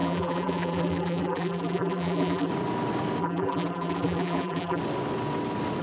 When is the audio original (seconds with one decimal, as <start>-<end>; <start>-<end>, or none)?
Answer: 2.5-3.2; 4.8-5.8